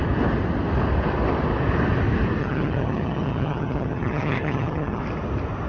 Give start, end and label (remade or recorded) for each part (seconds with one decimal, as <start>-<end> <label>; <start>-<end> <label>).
0.0-2.4 recorded; 2.4-5.0 remade; 5.0-5.7 recorded